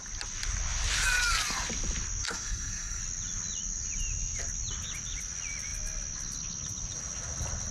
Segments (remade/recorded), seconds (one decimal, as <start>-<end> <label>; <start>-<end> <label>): 0.0-2.2 recorded; 2.2-3.0 remade; 3.0-7.7 recorded